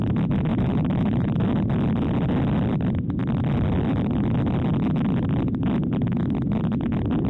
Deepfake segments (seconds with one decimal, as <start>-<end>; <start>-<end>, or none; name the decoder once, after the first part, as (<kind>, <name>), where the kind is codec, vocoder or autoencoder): 0.5-1.7 (vocoder, BigVGAN v2)